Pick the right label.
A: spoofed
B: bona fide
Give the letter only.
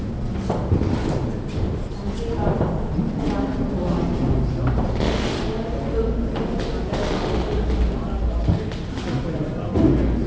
B